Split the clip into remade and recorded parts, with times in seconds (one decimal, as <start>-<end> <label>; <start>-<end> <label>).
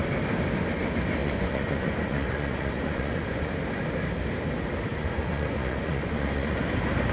0.0-1.2 recorded; 1.2-3.5 remade; 3.5-4.9 recorded; 4.9-6.6 remade; 6.6-7.1 recorded